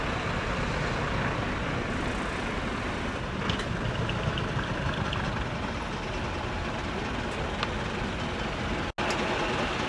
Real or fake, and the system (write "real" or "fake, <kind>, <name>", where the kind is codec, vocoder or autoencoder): real